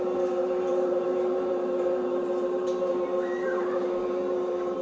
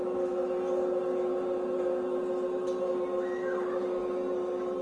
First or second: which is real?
second